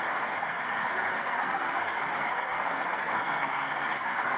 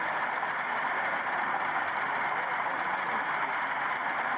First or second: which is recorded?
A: second